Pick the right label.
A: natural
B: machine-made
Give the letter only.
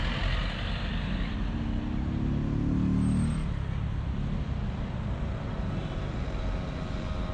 A